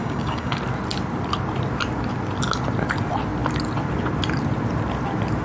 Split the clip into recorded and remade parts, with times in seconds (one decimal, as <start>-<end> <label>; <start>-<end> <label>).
0.0-0.6 remade; 0.6-5.4 recorded